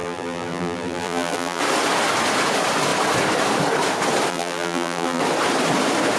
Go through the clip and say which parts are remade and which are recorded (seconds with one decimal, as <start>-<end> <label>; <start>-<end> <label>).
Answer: 0.0-1.6 remade; 1.6-4.3 recorded; 4.3-5.2 remade; 5.2-6.2 recorded

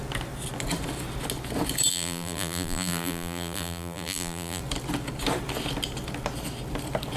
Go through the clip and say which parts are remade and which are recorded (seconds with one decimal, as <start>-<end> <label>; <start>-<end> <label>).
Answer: 0.0-1.9 recorded; 1.9-4.6 remade; 4.6-7.2 recorded

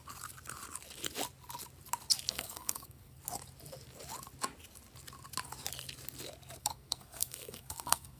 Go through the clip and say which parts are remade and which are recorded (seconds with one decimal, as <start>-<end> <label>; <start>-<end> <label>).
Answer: 0.0-2.3 recorded; 2.3-3.2 remade; 3.2-6.6 recorded; 6.6-8.2 remade

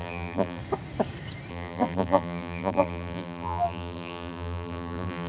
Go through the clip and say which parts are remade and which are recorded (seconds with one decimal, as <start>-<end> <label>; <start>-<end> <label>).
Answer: 0.0-0.6 remade; 0.6-1.5 recorded; 1.5-5.3 remade